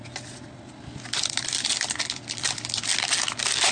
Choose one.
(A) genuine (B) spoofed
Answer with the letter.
A